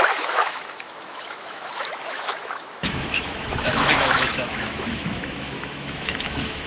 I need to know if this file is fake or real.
fake